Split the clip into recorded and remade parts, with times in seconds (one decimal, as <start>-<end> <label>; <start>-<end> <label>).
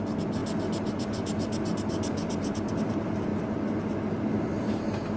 0.0-5.2 recorded